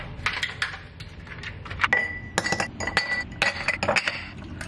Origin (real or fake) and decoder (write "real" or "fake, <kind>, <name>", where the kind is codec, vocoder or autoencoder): real